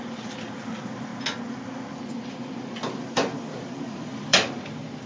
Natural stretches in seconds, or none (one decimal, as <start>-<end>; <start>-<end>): 1.1-2.1